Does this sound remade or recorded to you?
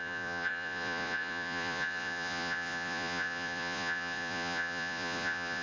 remade